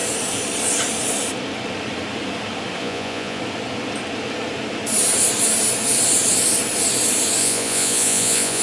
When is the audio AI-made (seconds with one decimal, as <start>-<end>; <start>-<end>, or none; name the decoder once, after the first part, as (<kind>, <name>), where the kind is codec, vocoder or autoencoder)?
2.8-3.4 (vocoder, Vocos); 7.4-8.6